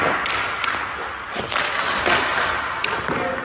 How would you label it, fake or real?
real